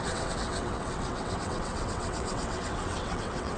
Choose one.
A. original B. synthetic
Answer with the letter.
B